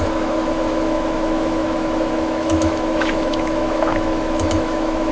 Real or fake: fake